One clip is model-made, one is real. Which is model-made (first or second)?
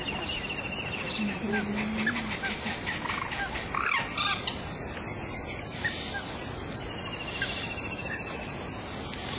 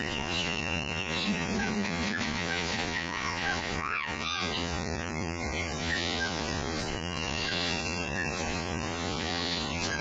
second